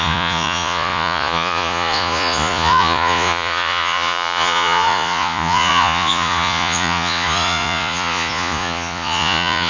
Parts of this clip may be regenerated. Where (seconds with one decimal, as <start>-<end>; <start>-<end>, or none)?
0.0-9.7